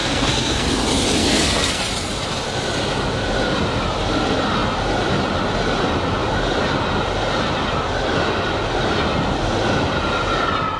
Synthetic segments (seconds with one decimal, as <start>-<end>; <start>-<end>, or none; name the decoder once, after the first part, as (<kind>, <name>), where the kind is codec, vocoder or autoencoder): 0.0-0.7 (codec, SNAC); 1.2-1.8